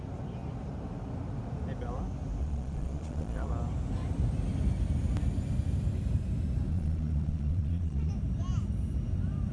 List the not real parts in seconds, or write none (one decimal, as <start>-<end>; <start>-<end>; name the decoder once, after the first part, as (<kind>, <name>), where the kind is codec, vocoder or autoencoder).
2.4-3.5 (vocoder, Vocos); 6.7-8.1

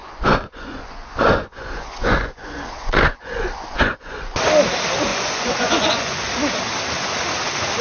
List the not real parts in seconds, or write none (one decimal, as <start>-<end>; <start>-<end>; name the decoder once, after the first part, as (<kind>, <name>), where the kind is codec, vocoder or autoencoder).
0.0-4.4 (vocoder, Vocos); 5.1-6.2

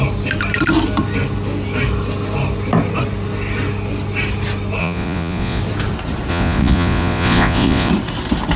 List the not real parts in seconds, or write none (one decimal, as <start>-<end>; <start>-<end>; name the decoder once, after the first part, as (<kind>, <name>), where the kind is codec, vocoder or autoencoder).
4.8-5.6 (vocoder, Vocos); 6.3-7.9